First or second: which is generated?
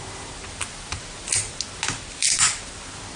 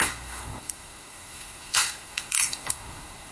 second